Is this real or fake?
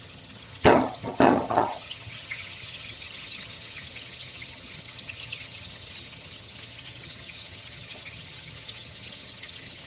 fake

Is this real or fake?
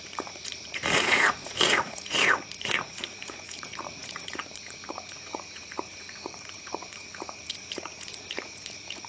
fake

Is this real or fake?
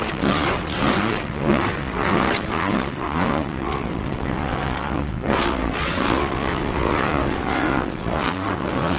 fake